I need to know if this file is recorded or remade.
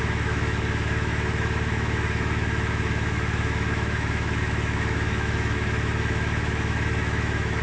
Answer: remade